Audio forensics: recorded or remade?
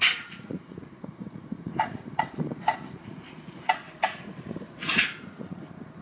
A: remade